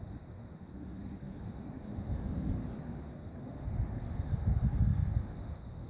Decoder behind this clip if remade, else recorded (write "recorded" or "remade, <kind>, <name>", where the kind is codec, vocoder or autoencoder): remade, autoencoder, DAC-VAE